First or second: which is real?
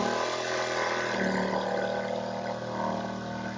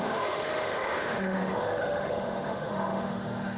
first